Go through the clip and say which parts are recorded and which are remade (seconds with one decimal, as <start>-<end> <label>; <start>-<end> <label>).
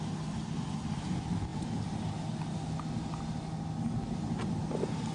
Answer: 0.0-5.1 recorded